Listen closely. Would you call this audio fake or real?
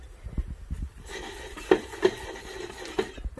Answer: real